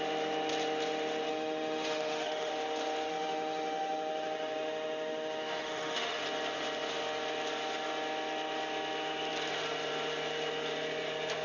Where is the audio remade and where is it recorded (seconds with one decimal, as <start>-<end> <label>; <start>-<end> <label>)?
0.0-1.3 recorded; 1.3-2.5 remade; 2.5-3.1 recorded; 3.1-6.2 remade; 6.2-11.4 recorded